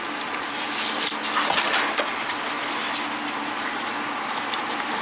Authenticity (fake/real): real